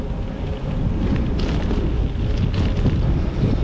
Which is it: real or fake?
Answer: real